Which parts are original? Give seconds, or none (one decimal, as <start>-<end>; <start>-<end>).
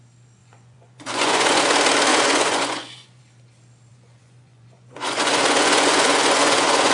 0.0-0.4; 1.6-2.1; 3.2-3.9